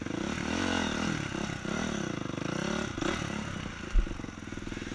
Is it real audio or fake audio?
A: real